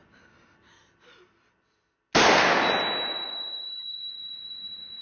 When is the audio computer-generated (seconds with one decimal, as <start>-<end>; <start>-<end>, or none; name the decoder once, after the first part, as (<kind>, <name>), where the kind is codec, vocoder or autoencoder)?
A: 3.0-5.0 (vocoder, BigVGAN v2)

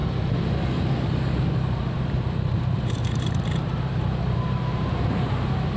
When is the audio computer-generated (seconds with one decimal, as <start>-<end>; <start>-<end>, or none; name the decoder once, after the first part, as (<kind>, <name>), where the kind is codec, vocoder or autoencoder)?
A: 1.8-5.3 (vocoder, BigVGAN v2)

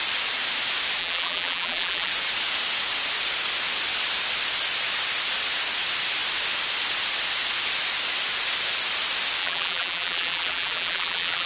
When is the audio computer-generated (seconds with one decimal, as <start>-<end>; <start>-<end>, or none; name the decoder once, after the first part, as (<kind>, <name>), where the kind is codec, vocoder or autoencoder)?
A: 1.0-2.1 (vocoder, BigVGAN v2); 9.4-11.5